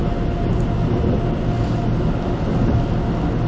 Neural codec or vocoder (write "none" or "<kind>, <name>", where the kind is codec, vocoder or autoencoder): none